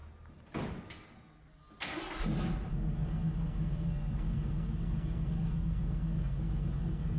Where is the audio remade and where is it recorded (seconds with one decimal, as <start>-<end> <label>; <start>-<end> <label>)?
0.0-2.7 recorded; 2.7-7.2 remade